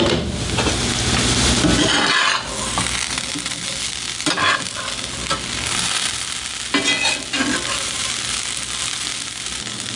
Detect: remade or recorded recorded